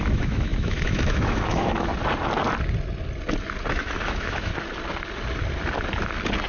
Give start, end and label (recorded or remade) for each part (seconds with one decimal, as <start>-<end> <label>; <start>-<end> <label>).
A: 0.0-1.9 remade; 1.9-3.7 recorded; 3.7-4.5 remade; 4.5-6.5 recorded